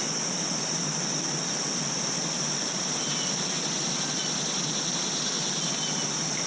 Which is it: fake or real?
real